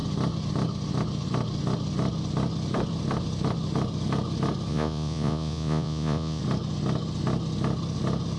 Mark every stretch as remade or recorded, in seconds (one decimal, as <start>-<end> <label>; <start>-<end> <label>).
0.0-4.7 recorded; 4.7-6.4 remade; 6.4-8.4 recorded